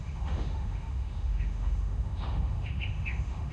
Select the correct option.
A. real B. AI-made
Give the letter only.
B